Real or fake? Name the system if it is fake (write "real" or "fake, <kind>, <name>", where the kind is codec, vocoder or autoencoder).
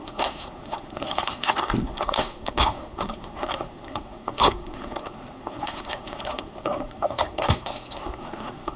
fake, codec, SNAC